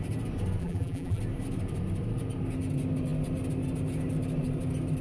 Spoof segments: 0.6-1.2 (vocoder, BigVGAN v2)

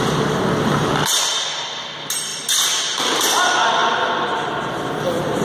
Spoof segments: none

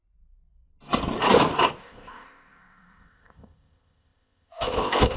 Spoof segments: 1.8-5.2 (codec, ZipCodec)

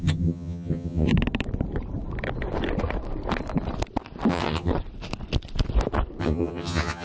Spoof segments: 0.0-1.1 (vocoder, HiFi-GAN); 4.3-4.7; 6.2-7.0